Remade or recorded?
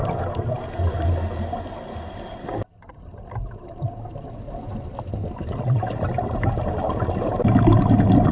recorded